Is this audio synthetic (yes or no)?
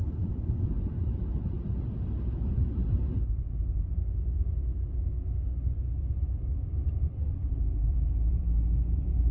yes